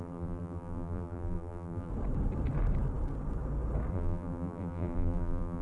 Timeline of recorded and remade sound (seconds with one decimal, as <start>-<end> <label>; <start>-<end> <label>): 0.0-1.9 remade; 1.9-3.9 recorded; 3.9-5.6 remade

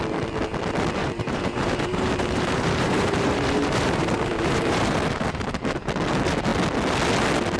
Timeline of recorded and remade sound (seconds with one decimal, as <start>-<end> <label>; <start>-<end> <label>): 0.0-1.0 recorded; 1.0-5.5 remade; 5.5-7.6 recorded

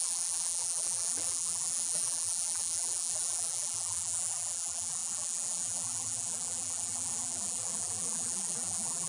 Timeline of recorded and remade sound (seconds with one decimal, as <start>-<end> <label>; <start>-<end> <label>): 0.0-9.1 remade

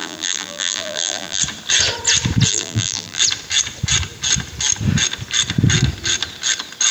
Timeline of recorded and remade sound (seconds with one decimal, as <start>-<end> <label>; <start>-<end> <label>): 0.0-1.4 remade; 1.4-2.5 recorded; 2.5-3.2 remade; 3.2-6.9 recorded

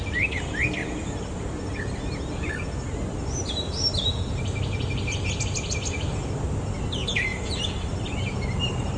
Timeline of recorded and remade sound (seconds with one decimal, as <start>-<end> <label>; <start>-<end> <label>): 0.0-7.3 recorded; 7.3-8.1 remade; 8.1-9.0 recorded

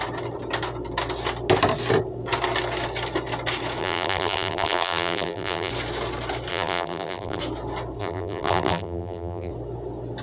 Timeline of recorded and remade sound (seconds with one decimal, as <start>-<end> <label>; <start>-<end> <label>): 0.0-3.8 recorded; 3.8-5.7 remade; 5.7-6.5 recorded; 6.5-7.4 remade; 7.4-8.0 recorded; 8.0-9.5 remade; 9.5-10.2 recorded

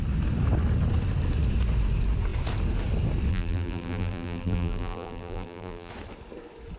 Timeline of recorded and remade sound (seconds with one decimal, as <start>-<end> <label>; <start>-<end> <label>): 0.0-3.3 recorded; 3.3-5.9 remade; 5.9-6.8 recorded

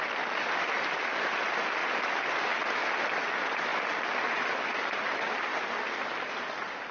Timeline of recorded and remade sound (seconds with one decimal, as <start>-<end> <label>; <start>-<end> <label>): 0.0-1.8 remade; 1.8-2.4 recorded; 2.4-5.5 remade; 5.5-6.2 recorded; 6.2-6.9 remade